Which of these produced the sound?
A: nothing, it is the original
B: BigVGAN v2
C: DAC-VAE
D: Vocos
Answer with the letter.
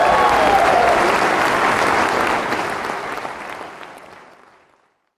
A